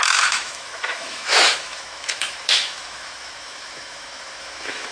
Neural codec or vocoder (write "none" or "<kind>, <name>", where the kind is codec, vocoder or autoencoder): autoencoder, DAC-VAE